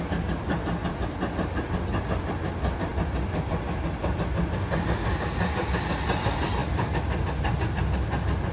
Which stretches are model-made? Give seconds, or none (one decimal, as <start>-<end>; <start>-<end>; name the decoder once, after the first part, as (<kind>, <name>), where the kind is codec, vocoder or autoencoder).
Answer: none